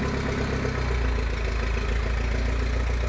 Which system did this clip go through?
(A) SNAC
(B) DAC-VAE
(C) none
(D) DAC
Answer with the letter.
C